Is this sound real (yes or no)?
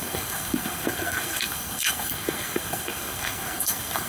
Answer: no